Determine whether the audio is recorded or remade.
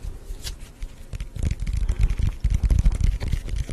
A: recorded